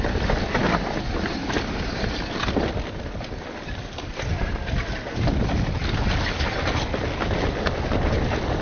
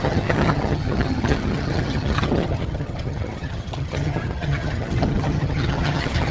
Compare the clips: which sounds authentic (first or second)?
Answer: first